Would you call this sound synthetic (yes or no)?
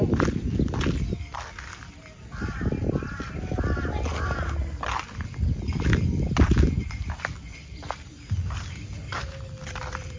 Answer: no